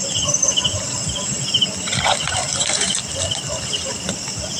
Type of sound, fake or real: fake